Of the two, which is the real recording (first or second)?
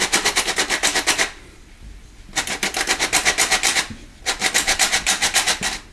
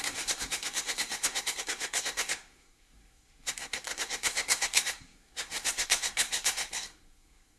first